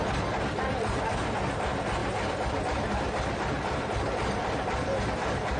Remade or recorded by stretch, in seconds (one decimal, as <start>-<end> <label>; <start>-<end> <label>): 0.0-5.6 recorded

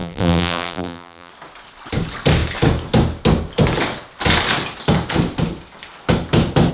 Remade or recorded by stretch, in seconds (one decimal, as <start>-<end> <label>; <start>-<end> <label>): 0.0-1.3 remade; 1.3-6.7 recorded

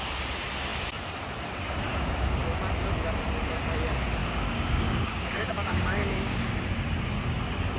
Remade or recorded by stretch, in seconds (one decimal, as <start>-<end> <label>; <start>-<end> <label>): 0.0-1.9 recorded; 1.9-2.4 remade; 2.4-4.2 recorded; 4.2-6.5 remade; 6.5-7.8 recorded

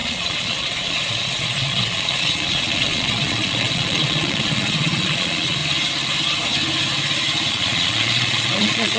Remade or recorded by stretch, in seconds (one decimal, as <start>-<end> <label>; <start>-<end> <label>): 0.0-5.6 remade; 5.6-7.5 recorded; 7.5-9.0 remade

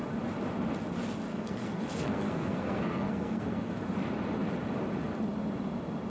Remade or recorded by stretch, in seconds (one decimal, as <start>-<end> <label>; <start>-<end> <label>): 0.0-1.3 recorded; 1.3-3.7 remade; 3.7-6.1 recorded